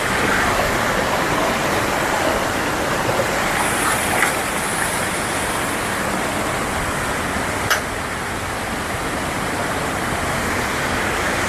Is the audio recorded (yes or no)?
yes